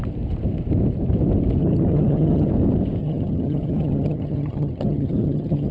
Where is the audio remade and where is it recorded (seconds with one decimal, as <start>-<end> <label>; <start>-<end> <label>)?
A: 0.0-1.6 recorded; 1.6-2.5 remade; 2.5-3.0 recorded; 3.0-5.7 remade